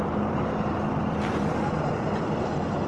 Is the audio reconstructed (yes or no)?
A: yes